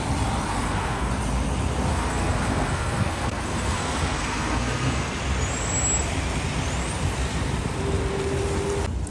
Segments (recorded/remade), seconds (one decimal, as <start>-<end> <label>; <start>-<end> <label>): 0.0-0.5 recorded; 0.5-1.1 remade; 1.1-1.9 recorded; 1.9-5.2 remade; 5.2-9.1 recorded